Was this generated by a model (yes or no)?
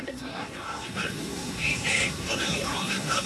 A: yes